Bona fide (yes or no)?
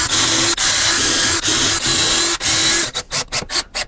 yes